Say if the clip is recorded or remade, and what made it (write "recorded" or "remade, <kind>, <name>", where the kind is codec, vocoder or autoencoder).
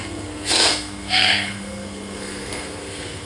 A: remade, codec, SNAC